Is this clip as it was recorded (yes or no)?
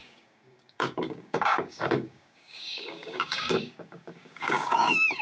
no